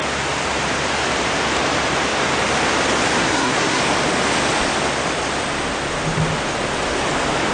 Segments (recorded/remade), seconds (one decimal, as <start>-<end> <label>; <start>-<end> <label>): 0.0-3.2 recorded; 3.2-3.8 remade; 3.8-7.5 recorded

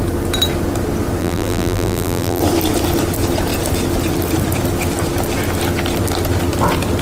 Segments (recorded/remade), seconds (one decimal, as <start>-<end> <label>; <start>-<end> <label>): 0.0-1.2 recorded; 1.2-2.4 remade; 2.4-7.0 recorded

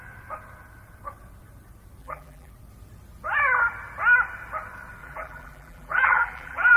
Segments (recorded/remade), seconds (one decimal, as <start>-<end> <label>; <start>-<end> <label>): 0.0-2.0 recorded; 2.0-2.5 remade; 2.5-5.0 recorded; 5.0-6.8 remade

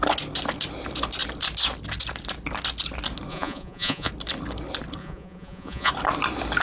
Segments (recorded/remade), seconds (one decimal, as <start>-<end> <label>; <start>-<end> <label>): 0.0-3.3 recorded; 3.3-4.1 remade; 4.1-5.0 recorded; 5.0-5.9 remade; 5.9-6.6 recorded

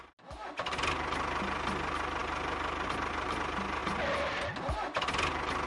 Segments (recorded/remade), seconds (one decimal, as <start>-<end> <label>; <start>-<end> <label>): 0.0-5.7 recorded

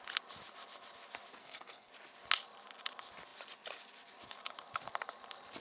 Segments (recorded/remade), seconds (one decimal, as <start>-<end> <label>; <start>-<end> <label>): 0.0-1.4 recorded; 1.4-1.9 remade; 1.9-5.6 recorded

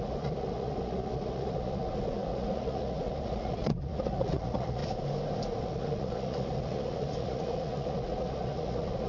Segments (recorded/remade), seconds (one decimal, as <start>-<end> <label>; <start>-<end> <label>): 0.0-4.8 remade; 4.8-5.6 recorded; 5.6-9.1 remade

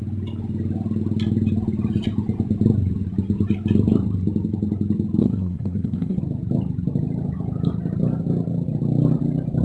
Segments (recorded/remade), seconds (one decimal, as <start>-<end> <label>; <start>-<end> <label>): 0.0-5.2 recorded; 5.2-6.2 remade; 6.2-9.6 recorded